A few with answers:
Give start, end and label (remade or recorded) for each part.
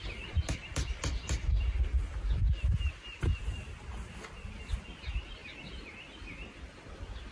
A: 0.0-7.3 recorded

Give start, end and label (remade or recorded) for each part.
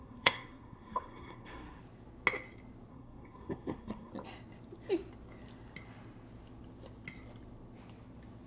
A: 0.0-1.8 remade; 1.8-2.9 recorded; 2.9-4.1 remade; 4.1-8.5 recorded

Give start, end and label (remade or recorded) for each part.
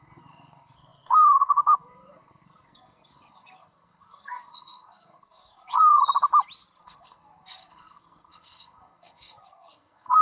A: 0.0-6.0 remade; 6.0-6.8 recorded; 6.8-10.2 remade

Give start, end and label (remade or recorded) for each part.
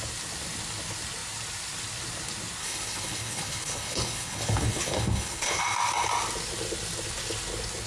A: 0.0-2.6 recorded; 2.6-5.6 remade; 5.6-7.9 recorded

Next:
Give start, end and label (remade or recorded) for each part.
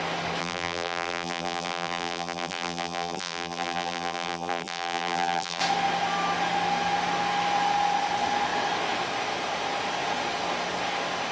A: 0.0-0.4 recorded; 0.4-5.6 remade; 5.6-11.3 recorded